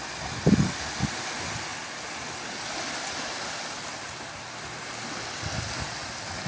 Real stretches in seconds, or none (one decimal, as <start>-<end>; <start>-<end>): 0.0-6.5